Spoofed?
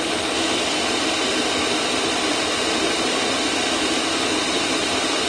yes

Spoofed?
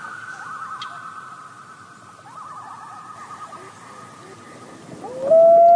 no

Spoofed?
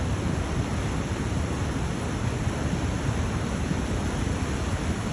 yes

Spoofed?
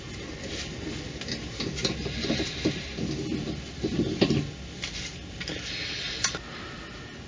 no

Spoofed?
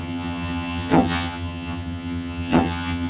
yes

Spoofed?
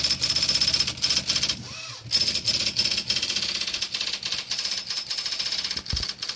no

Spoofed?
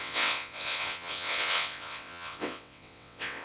yes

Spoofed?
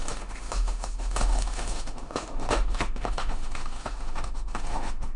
yes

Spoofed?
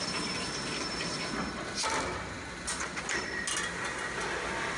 no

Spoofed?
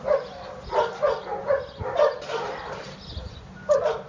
no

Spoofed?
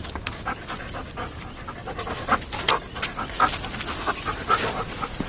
no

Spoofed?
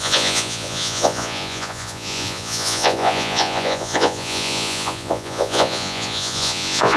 yes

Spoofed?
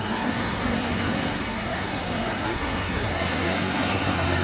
yes